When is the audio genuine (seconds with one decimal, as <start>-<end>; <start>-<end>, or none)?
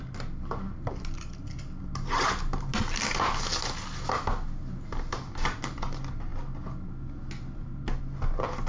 0.0-8.7